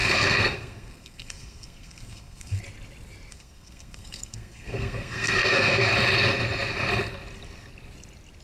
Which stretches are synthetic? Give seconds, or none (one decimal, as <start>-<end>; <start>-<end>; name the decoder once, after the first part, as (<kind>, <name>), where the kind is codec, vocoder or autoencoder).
0.0-2.6 (codec, SNAC); 3.3-5.9